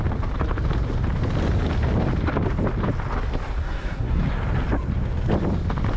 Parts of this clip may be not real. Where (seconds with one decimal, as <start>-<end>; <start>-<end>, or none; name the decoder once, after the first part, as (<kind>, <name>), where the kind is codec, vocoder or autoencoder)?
3.6-4.2 (codec, SNAC)